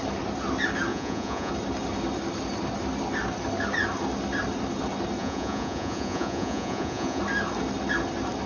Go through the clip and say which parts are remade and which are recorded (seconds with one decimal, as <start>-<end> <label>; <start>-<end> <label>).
0.0-0.9 recorded; 0.9-1.5 remade; 1.5-5.2 recorded; 5.2-7.2 remade; 7.2-8.5 recorded